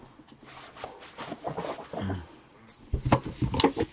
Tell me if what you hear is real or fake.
real